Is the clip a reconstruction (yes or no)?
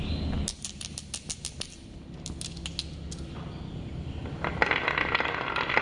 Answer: no